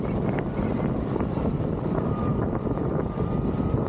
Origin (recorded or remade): remade